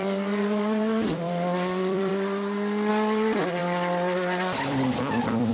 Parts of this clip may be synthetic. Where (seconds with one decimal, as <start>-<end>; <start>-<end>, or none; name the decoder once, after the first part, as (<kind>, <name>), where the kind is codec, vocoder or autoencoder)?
0.0-2.1 (vocoder, BigVGAN v2); 2.9-5.5